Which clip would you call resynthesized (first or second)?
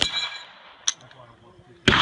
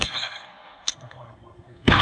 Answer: second